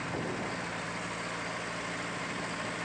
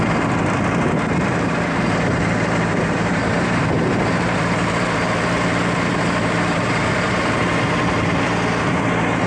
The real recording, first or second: first